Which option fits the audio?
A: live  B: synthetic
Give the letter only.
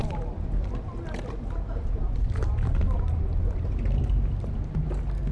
A